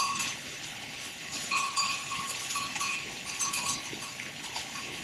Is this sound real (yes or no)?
no